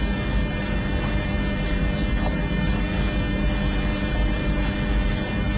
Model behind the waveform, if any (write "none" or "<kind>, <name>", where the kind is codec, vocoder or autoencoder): vocoder, BigVGAN v2